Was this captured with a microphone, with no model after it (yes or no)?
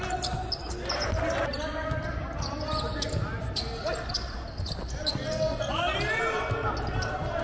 yes